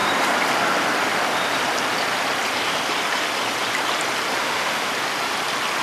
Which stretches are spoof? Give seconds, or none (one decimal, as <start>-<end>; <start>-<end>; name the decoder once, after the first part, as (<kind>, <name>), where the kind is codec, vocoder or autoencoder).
4.4-4.9 (autoencoder, DAC-VAE)